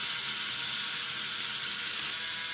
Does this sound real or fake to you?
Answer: real